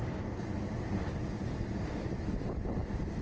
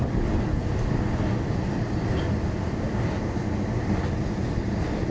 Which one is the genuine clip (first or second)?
second